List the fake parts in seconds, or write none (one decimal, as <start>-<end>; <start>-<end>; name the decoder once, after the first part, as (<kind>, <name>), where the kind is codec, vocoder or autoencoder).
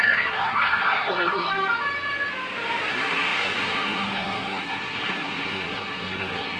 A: 0.0-1.5 (codec, SNAC); 2.9-6.6